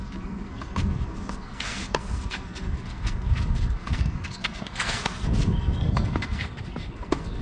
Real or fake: fake